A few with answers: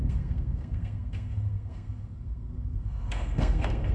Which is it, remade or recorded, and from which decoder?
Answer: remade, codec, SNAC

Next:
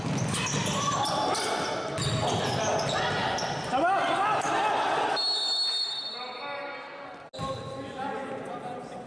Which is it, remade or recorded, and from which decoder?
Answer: recorded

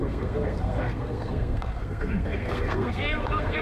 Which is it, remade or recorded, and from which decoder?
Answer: remade, codec, SNAC